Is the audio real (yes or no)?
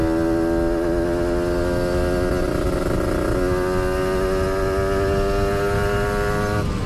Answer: yes